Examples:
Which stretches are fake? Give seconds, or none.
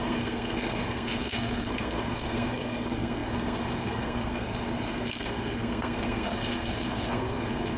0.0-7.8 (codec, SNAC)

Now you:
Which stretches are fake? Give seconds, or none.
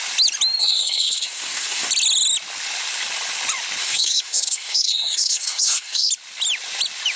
0.6-1.9 (codec, SNAC); 3.8-6.1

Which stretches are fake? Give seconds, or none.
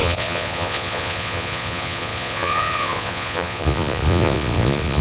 0.0-5.0 (vocoder, Vocos)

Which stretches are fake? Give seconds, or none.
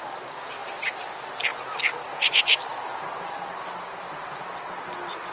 none